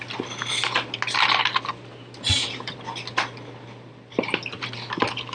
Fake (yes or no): no